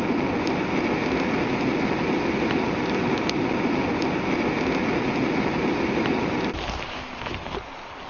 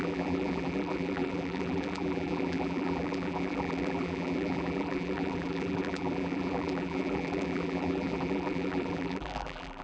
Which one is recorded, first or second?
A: first